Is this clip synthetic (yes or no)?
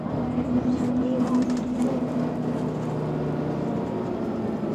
no